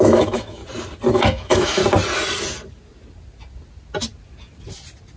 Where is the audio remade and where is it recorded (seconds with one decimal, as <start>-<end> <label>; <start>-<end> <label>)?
0.0-0.6 remade; 0.6-1.1 recorded; 1.1-1.8 remade; 1.8-5.2 recorded